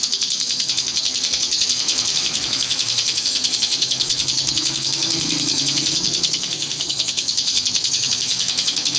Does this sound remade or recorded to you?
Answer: remade